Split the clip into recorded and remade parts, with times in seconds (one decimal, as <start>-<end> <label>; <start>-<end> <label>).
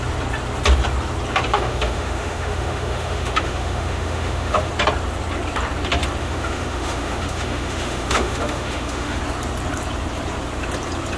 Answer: 0.0-1.5 recorded; 1.5-4.7 remade; 4.7-6.2 recorded; 6.2-9.2 remade; 9.2-11.2 recorded